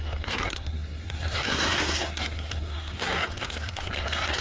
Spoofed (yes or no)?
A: yes